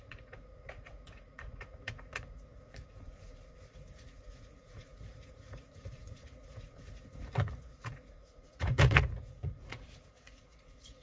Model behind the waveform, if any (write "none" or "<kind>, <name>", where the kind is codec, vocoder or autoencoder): vocoder, Vocos